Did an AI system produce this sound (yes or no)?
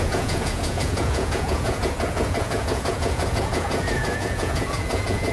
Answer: yes